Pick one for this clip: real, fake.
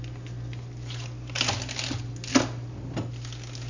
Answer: real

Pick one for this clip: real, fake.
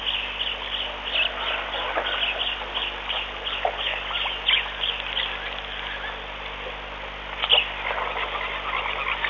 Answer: real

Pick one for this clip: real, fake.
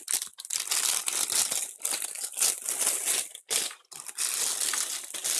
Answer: real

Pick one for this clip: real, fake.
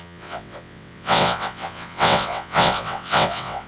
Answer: fake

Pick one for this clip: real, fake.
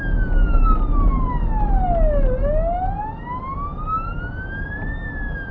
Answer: real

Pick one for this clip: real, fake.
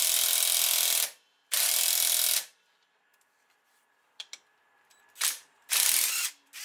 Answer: fake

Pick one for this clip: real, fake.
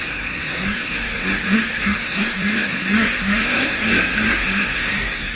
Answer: fake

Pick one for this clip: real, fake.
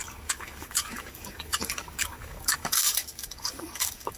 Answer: fake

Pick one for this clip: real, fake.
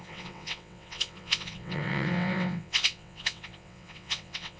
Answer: fake